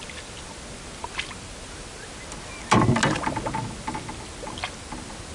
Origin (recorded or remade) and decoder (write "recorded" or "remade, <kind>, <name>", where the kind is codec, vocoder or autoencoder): recorded